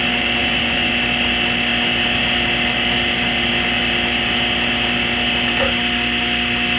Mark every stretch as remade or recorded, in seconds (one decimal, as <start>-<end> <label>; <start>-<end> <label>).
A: 0.0-0.4 recorded; 0.4-0.9 remade; 0.9-6.8 recorded